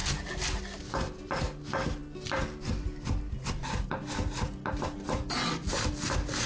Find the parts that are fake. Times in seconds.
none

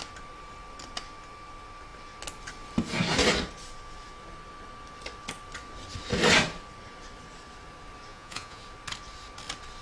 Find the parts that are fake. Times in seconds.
8.1-8.6

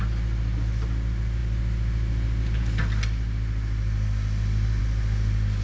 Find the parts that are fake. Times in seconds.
none